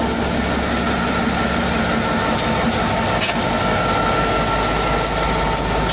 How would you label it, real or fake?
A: real